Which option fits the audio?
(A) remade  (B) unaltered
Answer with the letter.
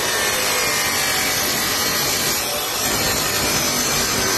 B